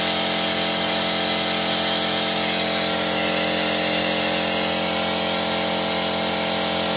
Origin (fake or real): real